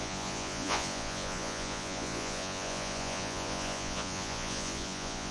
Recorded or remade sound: remade